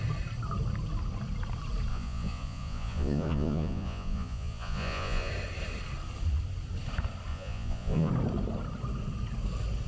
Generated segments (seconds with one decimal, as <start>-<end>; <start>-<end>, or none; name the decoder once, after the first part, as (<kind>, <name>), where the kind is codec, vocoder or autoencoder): 1.9-5.3 (vocoder, Vocos); 7.3-8.1